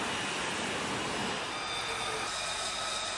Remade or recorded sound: recorded